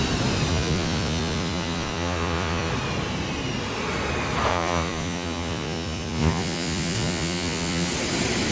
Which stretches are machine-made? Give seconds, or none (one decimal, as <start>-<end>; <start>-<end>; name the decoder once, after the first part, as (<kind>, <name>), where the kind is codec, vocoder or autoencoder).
0.5-2.7 (vocoder, Vocos); 4.5-7.9